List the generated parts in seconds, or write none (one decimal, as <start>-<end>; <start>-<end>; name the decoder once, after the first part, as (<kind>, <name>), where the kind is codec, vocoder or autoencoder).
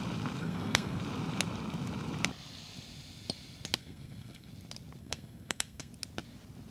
0.4-1.0 (codec, SNAC); 3.8-4.5; 5.0-5.9